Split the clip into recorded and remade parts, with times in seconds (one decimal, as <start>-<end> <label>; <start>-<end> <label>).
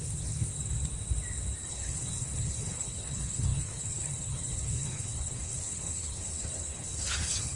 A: 0.0-0.5 remade; 0.5-1.7 recorded; 1.7-7.6 remade